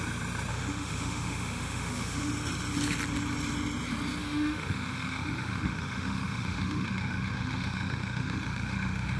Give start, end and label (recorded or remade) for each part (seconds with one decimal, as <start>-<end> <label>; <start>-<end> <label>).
0.0-0.5 recorded; 0.5-2.3 remade; 2.3-4.2 recorded; 4.2-9.2 remade